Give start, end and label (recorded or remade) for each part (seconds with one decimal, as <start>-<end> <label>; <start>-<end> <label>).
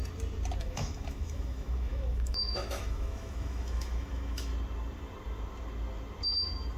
0.0-0.6 recorded; 0.6-4.5 remade; 4.5-6.8 recorded